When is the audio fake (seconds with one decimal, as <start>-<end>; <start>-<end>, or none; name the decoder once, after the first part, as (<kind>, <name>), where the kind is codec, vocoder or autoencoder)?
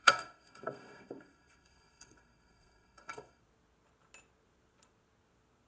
0.0-3.4 (codec, SNAC)